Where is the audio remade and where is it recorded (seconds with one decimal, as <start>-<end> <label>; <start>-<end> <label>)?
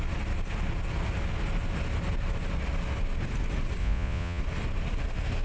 0.0-3.8 recorded; 3.8-4.4 remade; 4.4-5.4 recorded